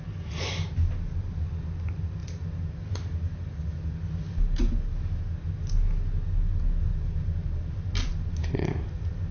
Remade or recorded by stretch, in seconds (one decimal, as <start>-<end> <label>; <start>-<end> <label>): 0.0-6.9 recorded; 6.9-8.8 remade; 8.8-9.3 recorded